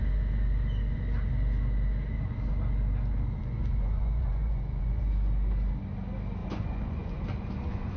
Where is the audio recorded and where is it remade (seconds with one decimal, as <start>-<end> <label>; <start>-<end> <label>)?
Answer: 0.0-3.4 recorded; 3.4-5.0 remade; 5.0-6.4 recorded; 6.4-7.2 remade; 7.2-8.0 recorded